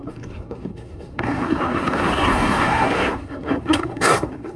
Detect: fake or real fake